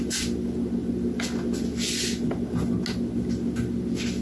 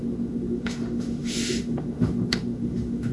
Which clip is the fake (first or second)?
second